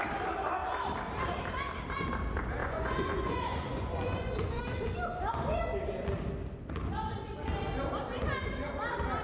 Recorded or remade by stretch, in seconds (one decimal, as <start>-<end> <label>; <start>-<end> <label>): 0.0-2.6 recorded; 2.6-4.6 remade; 4.6-9.2 recorded